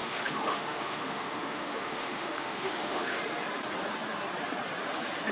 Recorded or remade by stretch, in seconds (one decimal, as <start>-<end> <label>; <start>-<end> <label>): 0.0-3.2 remade; 3.2-5.3 recorded